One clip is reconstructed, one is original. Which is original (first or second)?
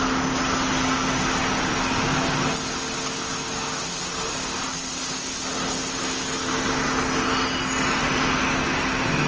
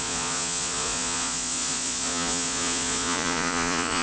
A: first